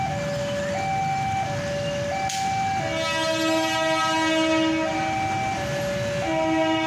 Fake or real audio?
real